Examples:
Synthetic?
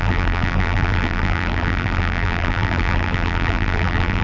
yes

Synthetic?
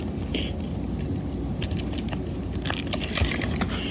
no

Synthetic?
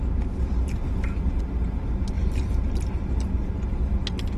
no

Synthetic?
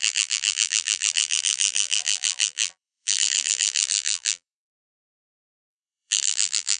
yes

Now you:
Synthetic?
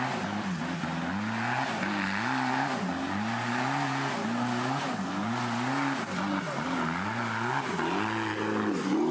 no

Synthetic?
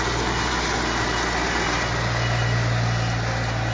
no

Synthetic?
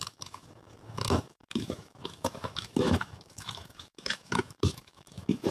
yes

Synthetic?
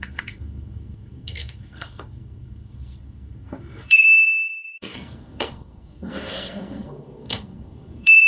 yes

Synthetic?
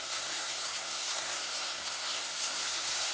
yes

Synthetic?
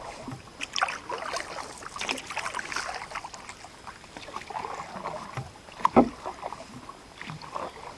no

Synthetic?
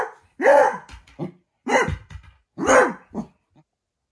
no